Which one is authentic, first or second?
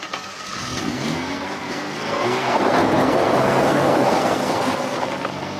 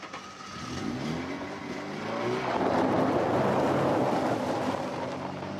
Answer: second